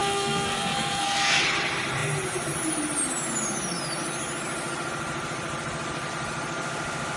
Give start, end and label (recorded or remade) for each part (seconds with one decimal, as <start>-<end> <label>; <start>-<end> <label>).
0.0-1.4 remade; 1.4-7.2 recorded